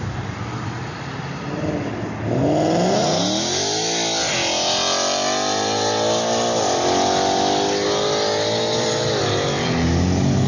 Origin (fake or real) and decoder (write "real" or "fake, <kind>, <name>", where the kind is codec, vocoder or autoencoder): real